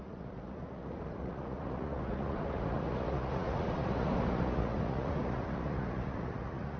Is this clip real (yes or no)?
no